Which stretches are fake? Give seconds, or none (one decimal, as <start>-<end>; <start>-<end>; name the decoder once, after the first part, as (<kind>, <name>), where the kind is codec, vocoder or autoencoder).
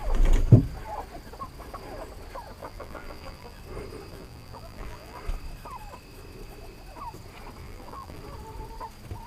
2.6-3.6 (vocoder, BigVGAN v2); 4.1-5.2; 7.6-8.2